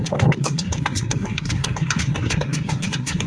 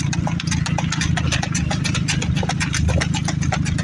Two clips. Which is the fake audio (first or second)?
first